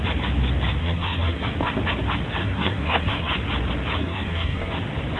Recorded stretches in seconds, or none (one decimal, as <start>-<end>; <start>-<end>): 0.0-0.8; 1.5-2.4; 3.3-4.0; 4.7-5.2